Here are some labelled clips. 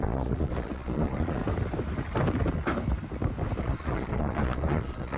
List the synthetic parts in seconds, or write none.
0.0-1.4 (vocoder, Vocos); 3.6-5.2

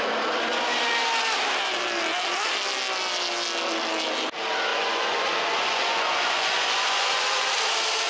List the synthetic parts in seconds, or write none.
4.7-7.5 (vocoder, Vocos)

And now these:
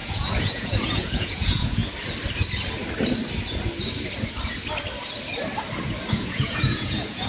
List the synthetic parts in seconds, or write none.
0.0-1.8 (vocoder, Vocos); 6.1-7.3